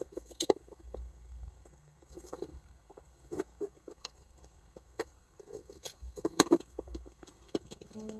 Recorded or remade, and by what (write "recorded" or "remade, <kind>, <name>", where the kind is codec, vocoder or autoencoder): remade, codec, SNAC